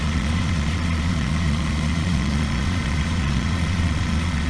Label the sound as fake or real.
fake